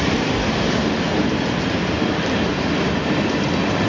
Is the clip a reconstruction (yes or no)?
no